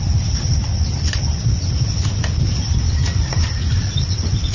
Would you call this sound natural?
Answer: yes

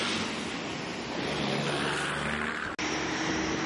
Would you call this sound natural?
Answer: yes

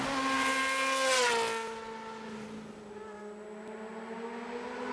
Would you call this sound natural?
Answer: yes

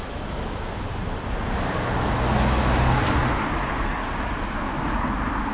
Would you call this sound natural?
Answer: yes